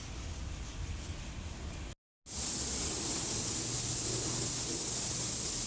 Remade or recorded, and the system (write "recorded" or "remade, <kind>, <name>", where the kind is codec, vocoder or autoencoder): recorded